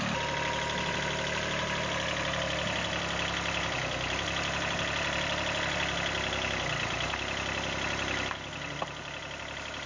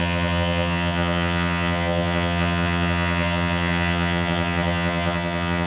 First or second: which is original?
first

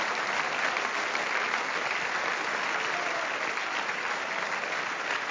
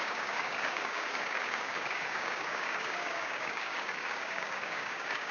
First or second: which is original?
first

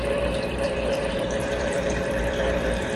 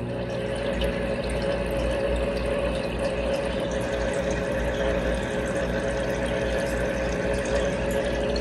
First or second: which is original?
second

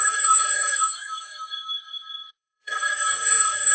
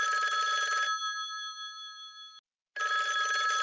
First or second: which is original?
second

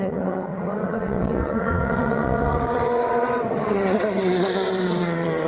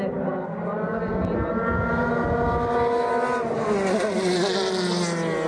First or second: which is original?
second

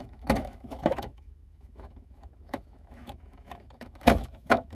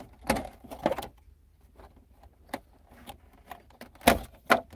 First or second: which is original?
second